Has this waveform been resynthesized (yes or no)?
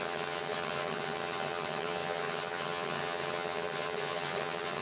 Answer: yes